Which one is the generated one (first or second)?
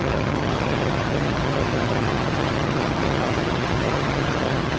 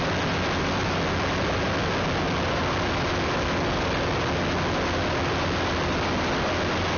first